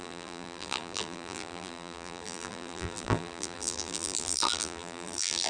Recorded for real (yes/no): no